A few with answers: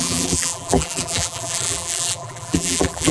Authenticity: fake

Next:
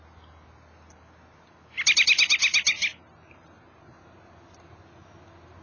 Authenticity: real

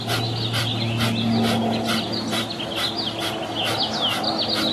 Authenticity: real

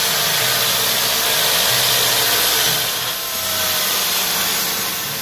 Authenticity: real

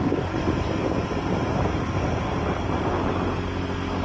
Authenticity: real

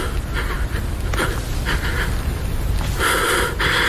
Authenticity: real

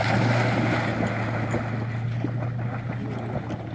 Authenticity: real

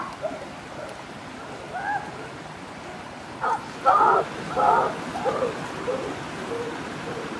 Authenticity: real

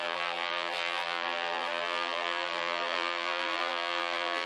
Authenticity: fake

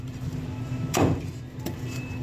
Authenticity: fake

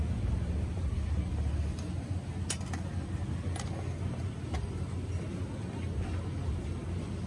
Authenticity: real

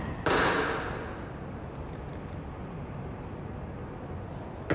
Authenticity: real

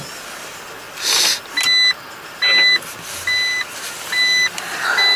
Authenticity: real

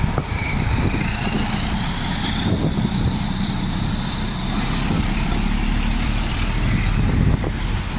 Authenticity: fake